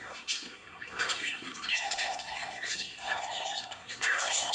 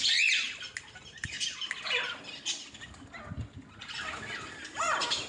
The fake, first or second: first